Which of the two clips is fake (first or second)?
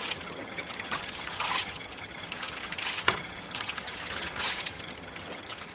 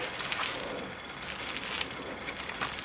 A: first